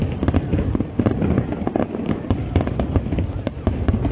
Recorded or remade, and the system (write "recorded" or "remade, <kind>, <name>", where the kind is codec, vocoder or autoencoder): recorded